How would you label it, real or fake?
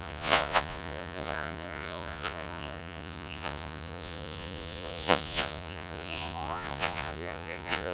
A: fake